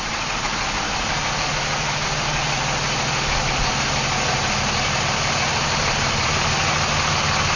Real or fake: real